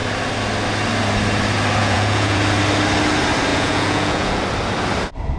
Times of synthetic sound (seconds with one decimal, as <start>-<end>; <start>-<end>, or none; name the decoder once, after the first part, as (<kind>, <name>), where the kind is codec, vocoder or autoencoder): 1.8-2.4 (vocoder, Vocos); 3.5-4.4